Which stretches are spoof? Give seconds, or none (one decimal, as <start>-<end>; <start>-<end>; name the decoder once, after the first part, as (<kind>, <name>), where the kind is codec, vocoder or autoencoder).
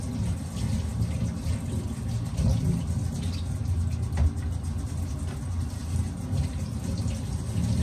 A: none